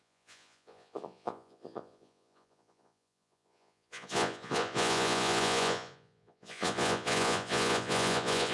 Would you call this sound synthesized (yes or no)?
yes